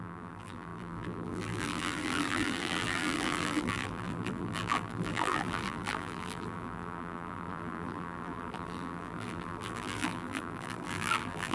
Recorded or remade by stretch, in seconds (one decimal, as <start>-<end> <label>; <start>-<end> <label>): 0.0-11.5 remade